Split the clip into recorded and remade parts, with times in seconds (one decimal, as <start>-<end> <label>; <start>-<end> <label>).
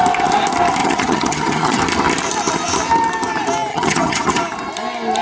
0.0-0.8 recorded; 0.8-1.8 remade; 1.8-3.7 recorded; 3.7-4.4 remade; 4.4-5.2 recorded